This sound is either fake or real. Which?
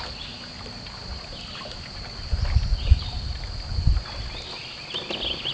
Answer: real